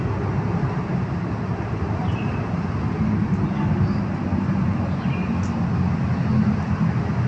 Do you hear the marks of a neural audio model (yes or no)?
no